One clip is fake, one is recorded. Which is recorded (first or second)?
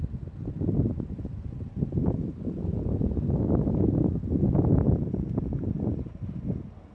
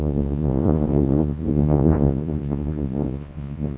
first